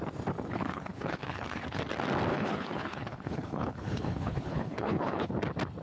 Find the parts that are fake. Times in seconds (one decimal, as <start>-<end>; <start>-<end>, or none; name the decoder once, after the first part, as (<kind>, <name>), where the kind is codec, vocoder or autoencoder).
0.5-1.8 (codec, HILCodec); 2.3-5.3